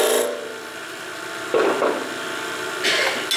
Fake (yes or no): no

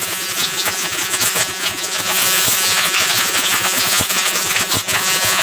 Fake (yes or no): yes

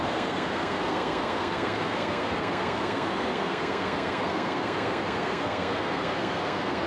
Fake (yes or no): yes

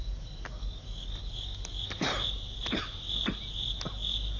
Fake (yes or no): no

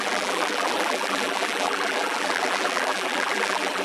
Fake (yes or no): yes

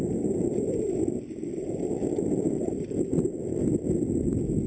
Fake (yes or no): no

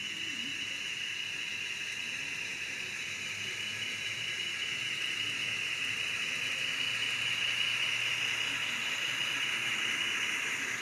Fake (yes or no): no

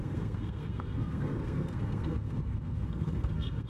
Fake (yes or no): yes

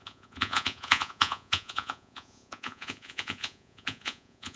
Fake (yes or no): yes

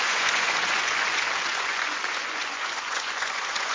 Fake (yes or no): yes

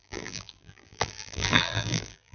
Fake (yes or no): yes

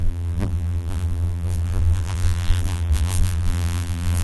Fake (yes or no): yes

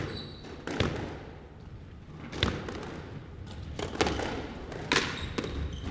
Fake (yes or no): no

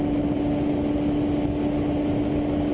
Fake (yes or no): no